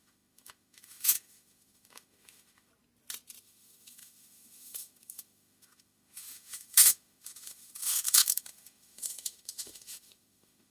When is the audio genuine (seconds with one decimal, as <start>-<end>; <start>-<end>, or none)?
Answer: 2.7-3.4